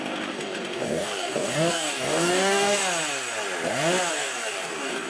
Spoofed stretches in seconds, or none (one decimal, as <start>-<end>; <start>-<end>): 0.0-2.8; 4.1-5.1